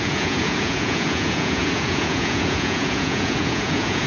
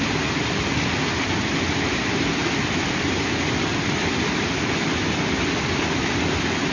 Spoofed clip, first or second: first